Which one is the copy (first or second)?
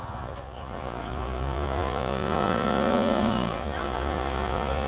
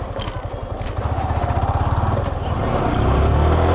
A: first